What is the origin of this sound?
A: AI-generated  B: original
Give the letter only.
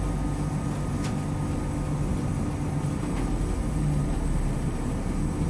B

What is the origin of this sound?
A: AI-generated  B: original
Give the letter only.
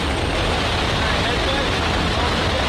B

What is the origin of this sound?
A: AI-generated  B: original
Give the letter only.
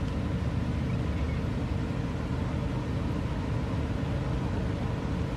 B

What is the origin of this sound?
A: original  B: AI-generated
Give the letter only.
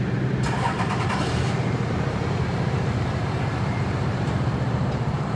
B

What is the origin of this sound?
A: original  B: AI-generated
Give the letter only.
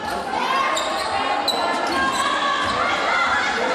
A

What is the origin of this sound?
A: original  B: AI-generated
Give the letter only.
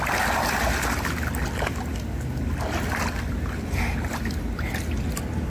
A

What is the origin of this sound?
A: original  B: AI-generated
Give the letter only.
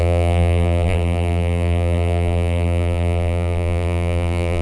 B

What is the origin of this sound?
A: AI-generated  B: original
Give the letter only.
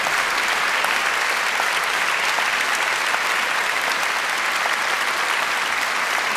B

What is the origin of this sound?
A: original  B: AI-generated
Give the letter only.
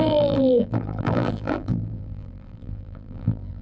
B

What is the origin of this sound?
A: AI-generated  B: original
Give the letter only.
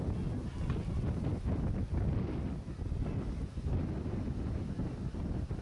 B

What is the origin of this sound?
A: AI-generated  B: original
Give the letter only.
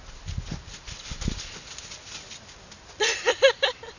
B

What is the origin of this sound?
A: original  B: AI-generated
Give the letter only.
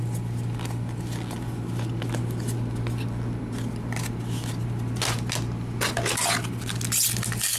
A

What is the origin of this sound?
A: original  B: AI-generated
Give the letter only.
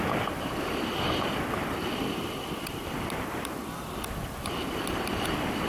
A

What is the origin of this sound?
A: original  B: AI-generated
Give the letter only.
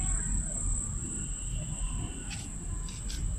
A